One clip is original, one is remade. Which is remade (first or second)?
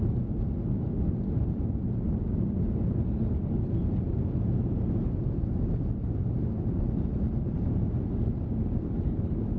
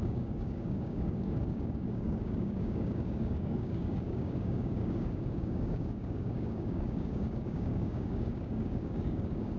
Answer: second